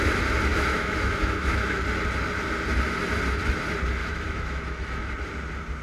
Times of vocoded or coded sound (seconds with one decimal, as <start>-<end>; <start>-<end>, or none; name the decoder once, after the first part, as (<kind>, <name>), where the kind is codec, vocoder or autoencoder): 0.5-1.8 (autoencoder, DAC-VAE); 4.0-5.1

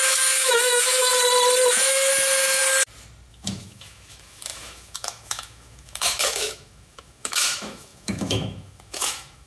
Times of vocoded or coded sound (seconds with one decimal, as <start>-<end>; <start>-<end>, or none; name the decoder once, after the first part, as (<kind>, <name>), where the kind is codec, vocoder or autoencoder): 0.0-1.1 (autoencoder, DAC-VAE); 1.7-2.6; 3.3-9.5

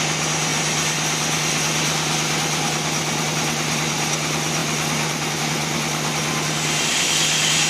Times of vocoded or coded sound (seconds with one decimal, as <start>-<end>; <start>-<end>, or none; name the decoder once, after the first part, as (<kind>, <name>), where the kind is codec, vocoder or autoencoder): none